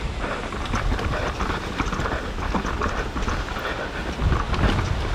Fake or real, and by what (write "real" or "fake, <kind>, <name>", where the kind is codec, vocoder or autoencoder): real